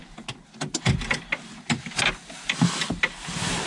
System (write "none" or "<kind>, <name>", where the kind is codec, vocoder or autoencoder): none